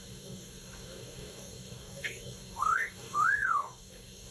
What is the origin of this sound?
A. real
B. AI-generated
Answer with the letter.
B